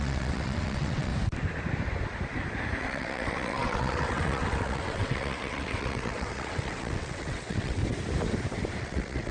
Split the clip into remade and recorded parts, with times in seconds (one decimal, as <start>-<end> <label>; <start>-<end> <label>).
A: 0.0-1.1 remade; 1.1-2.8 recorded; 2.8-7.8 remade; 7.8-8.8 recorded; 8.8-9.3 remade

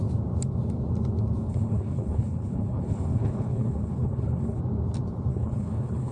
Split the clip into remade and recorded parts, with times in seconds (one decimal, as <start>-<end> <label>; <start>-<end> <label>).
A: 0.0-1.5 recorded; 1.5-4.6 remade; 4.6-5.3 recorded; 5.3-6.1 remade

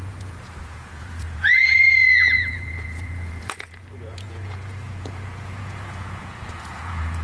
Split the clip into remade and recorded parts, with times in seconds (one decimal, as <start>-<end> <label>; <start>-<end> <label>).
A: 0.0-7.2 remade

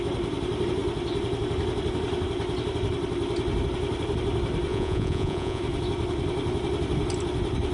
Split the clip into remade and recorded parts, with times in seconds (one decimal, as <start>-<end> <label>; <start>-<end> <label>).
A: 0.0-4.7 recorded; 4.7-5.6 remade; 5.6-7.7 recorded

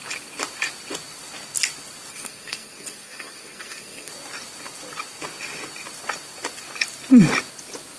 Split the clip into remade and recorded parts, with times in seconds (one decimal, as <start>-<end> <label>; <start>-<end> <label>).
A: 0.0-2.1 recorded; 2.1-4.1 remade; 4.1-8.0 recorded

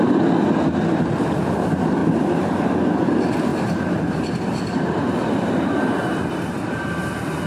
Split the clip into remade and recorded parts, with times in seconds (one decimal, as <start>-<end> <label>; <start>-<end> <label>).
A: 0.0-2.0 recorded; 2.0-2.7 remade; 2.7-3.5 recorded; 3.5-6.7 remade; 6.7-7.5 recorded

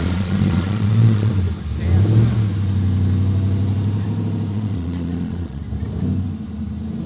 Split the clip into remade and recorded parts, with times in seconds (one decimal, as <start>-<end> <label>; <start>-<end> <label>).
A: 0.0-1.3 remade; 1.3-4.5 recorded; 4.5-5.6 remade; 5.6-7.1 recorded